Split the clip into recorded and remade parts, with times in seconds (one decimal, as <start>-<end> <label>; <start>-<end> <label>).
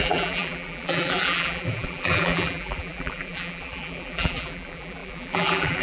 0.0-5.8 remade